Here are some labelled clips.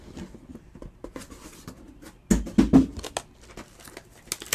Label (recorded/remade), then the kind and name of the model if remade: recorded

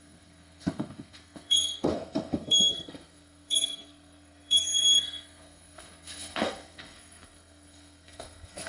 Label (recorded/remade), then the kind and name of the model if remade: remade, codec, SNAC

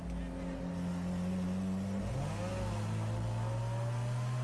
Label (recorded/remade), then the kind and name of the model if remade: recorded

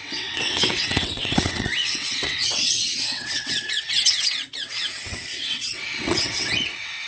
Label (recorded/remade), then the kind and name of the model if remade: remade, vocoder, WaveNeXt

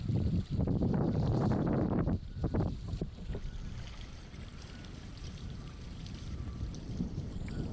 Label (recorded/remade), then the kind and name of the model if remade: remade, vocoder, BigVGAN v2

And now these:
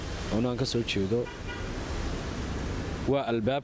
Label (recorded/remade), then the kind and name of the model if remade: recorded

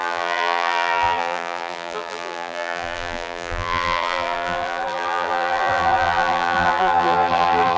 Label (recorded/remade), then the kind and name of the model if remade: remade, vocoder, BigVGAN v2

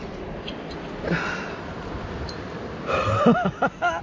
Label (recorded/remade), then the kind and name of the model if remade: recorded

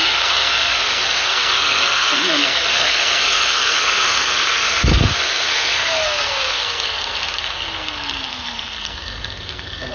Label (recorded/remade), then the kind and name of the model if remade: remade, codec, SNAC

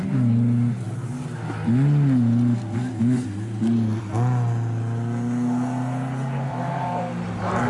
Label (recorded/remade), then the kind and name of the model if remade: recorded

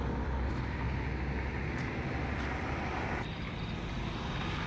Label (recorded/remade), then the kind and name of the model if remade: recorded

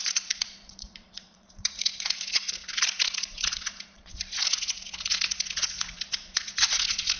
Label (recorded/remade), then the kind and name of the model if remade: remade, vocoder, Vocos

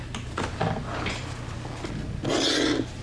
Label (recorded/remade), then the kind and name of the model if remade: recorded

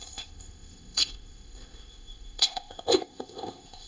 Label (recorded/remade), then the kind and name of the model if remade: remade, codec, ZipCodec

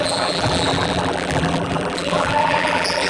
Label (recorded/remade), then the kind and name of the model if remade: remade, vocoder, BigVGAN v2